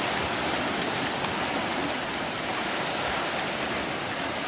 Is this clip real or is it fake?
fake